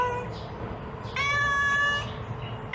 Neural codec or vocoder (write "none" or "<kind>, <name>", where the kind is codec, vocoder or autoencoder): none